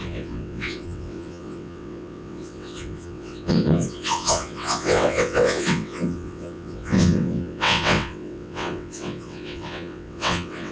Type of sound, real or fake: fake